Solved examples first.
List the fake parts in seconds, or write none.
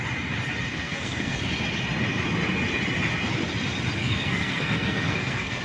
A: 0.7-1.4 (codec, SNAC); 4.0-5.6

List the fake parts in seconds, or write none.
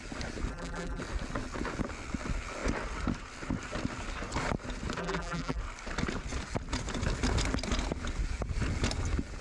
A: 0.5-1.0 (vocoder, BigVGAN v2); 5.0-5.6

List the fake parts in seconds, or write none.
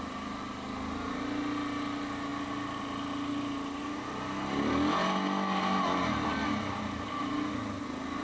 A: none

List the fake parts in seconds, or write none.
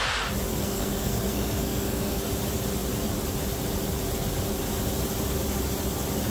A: 0.5-2.3 (codec, SNAC)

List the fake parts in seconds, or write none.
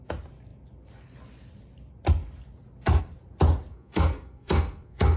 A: 3.7-5.2 (codec, SNAC)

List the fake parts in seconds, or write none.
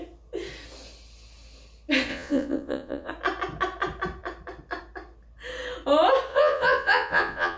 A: 2.1-3.1 (vocoder, Vocos); 6.3-7.6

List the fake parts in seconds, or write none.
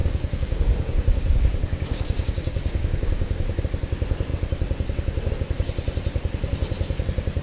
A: 0.0-3.6 (codec, DAC)